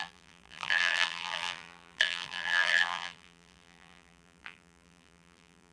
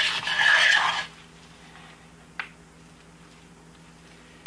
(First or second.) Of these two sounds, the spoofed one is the first